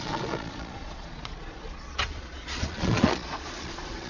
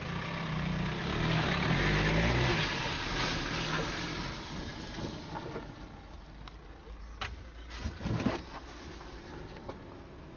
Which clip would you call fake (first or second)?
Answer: first